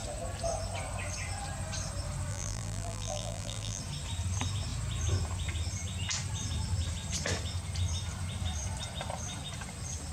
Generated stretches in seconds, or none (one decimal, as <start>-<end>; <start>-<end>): 2.3-3.8

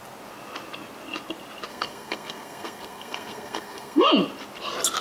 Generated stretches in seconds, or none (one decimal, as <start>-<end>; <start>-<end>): 1.7-4.1

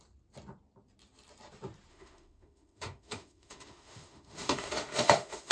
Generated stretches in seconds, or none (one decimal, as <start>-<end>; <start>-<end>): 1.9-5.5

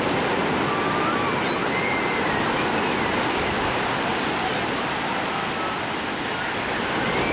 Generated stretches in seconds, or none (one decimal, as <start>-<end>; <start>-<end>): 1.6-2.5